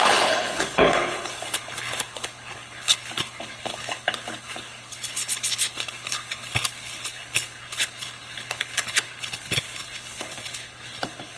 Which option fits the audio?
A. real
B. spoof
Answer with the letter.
B